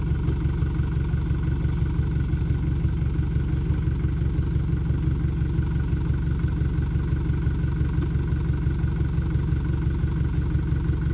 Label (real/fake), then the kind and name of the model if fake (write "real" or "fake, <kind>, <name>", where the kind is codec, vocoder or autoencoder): real